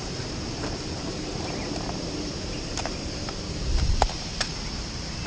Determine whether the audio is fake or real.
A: fake